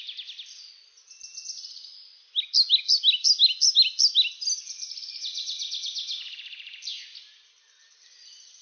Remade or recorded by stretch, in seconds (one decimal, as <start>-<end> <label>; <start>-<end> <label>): 0.0-8.6 recorded